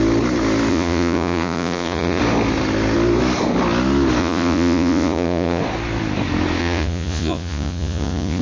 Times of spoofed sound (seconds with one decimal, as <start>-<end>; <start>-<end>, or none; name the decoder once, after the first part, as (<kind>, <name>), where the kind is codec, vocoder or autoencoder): 0.7-2.2 (vocoder, Vocos); 4.2-5.6; 6.6-8.4